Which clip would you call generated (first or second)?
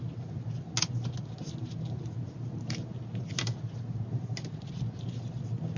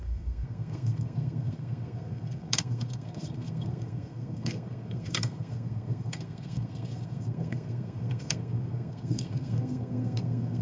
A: second